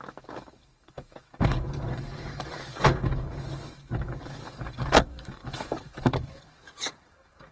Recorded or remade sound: remade